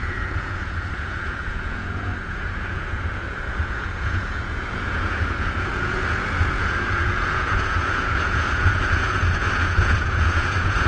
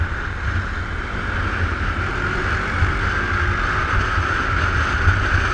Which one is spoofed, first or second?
first